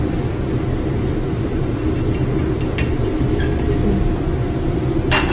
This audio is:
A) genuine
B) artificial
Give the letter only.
A